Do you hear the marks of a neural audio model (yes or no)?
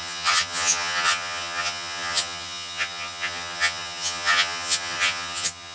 yes